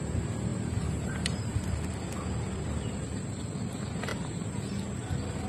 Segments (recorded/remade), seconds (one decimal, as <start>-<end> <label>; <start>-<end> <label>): 0.0-0.5 recorded; 0.5-1.5 remade; 1.5-4.1 recorded; 4.1-4.7 remade; 4.7-5.5 recorded